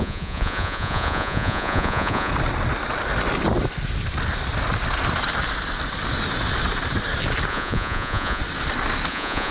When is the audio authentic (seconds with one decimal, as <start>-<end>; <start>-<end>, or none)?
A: 2.3-7.5; 8.4-9.1